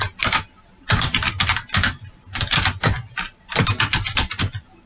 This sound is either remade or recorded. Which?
recorded